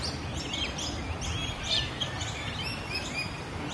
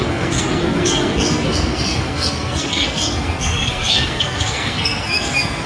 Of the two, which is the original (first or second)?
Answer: first